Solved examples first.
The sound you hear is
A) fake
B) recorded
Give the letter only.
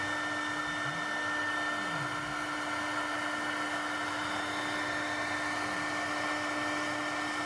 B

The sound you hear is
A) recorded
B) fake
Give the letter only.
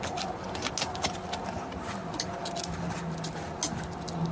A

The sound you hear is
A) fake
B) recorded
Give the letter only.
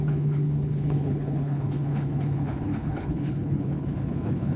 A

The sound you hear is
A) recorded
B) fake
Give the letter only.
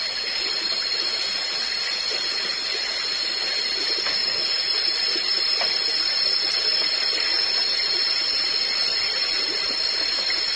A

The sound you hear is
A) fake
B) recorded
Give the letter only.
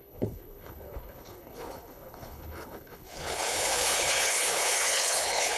A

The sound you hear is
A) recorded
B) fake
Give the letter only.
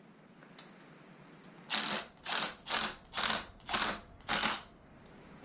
A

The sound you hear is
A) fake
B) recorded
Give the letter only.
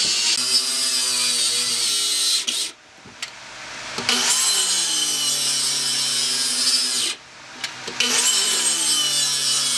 B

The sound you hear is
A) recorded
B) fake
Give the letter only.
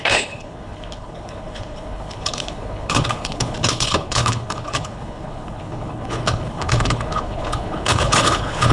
B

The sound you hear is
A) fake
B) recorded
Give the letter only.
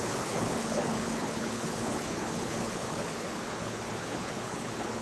A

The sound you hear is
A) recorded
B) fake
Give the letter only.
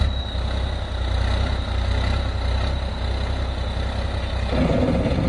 A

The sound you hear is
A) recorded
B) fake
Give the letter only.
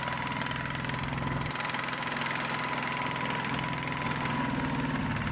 A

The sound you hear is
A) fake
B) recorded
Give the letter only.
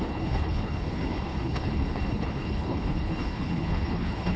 A